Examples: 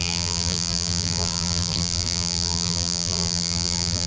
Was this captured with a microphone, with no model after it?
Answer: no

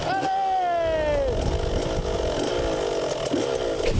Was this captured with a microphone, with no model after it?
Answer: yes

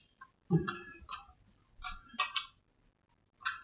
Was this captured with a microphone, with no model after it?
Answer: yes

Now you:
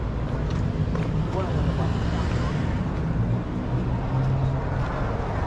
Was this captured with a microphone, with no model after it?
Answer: yes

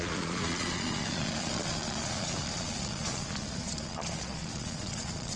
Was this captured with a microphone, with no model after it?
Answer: no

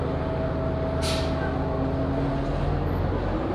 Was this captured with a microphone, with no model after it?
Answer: yes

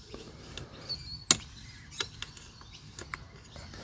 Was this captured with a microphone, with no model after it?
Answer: yes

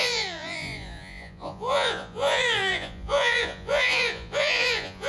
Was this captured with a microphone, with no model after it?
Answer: no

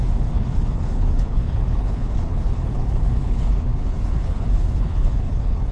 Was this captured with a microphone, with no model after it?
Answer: no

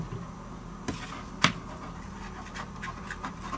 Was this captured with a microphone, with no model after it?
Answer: yes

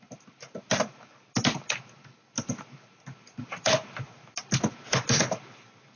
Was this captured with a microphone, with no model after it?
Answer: yes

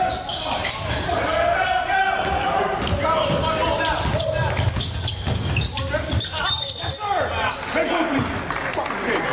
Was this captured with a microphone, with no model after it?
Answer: yes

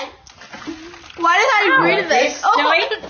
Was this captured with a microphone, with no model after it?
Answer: yes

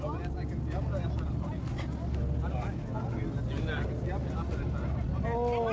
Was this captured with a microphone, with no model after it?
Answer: yes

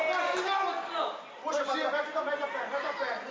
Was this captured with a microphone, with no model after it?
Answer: yes